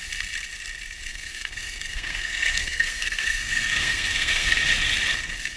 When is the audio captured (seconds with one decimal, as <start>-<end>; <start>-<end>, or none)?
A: 0.0-1.1; 4.5-5.6